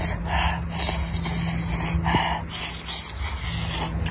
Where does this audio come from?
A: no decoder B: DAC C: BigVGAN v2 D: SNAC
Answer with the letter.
A